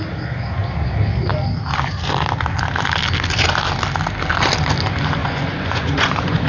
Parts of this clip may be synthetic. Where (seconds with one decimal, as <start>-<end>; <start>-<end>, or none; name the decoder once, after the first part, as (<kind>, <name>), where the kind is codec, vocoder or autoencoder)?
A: 5.2-6.5 (vocoder, Vocos)